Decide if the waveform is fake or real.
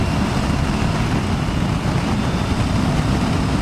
real